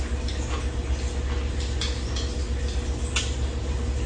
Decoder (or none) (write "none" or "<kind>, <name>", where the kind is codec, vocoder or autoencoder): none